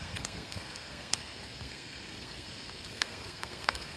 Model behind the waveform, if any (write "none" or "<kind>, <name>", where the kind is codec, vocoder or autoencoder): codec, SNAC